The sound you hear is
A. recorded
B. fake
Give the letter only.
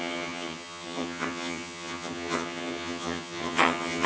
B